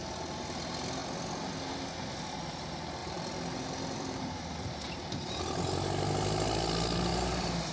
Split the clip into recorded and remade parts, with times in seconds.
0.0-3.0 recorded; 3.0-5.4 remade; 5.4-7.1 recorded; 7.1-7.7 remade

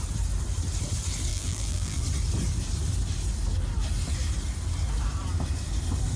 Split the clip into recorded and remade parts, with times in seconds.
0.0-1.3 recorded; 1.3-2.0 remade; 2.0-6.2 recorded

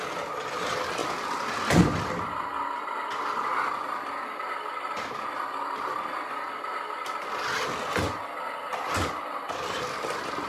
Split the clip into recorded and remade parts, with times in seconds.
0.0-10.5 recorded

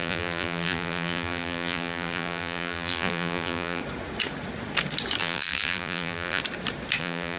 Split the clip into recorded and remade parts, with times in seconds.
0.0-3.8 remade; 3.8-5.2 recorded; 5.2-6.4 remade; 6.4-7.0 recorded; 7.0-7.4 remade

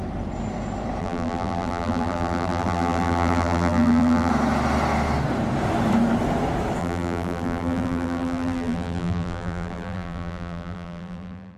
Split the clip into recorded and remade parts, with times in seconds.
0.0-1.0 recorded; 1.0-4.3 remade; 4.3-6.8 recorded; 6.8-11.6 remade

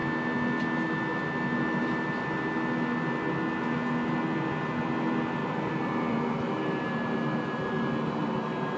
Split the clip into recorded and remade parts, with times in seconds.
0.0-5.4 recorded; 5.4-6.6 remade; 6.6-8.8 recorded